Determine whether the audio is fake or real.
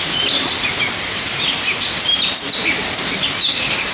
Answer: real